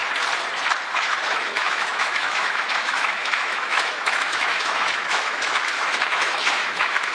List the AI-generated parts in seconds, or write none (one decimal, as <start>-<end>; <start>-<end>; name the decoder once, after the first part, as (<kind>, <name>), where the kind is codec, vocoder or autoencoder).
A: 0.9-7.1 (autoencoder, DAC-VAE)